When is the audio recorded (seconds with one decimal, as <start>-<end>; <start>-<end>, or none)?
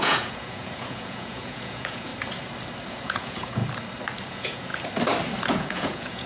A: 2.1-2.9; 3.6-4.3; 4.7-5.5